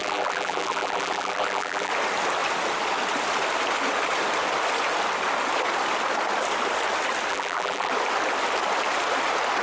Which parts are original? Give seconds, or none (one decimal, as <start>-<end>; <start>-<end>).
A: 1.9-7.3; 7.9-9.6